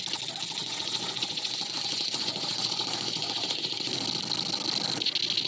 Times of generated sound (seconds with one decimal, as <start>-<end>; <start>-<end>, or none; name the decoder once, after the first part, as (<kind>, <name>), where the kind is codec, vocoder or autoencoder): 0.6-3.9 (vocoder, Vocos)